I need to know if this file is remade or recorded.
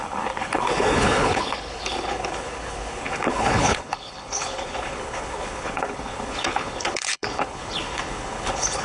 remade